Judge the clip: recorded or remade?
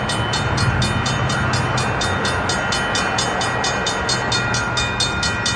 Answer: recorded